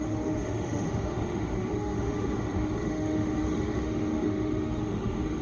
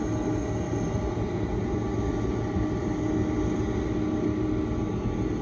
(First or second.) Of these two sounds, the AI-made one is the first